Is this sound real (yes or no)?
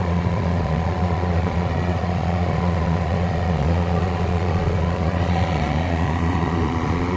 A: no